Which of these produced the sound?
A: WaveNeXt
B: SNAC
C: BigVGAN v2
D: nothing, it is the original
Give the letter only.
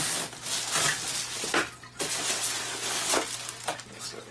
D